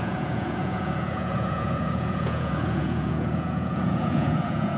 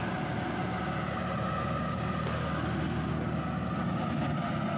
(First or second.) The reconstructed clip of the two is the first